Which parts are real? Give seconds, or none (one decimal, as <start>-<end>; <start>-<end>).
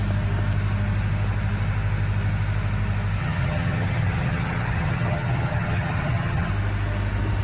0.0-3.2; 6.5-7.4